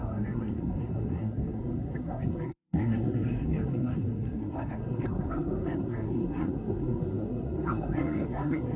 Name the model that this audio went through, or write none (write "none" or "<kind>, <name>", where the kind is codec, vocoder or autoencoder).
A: codec, SNAC